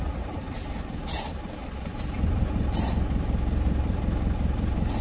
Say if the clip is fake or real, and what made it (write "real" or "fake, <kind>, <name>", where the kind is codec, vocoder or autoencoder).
fake, vocoder, BigVGAN v2